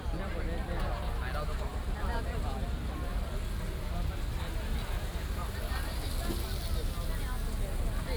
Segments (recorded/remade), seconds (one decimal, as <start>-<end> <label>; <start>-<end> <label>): 0.0-8.2 recorded

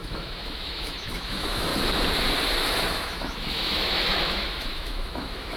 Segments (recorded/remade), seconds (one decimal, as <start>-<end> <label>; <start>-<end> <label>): 0.0-1.7 remade; 1.7-2.9 recorded; 2.9-5.6 remade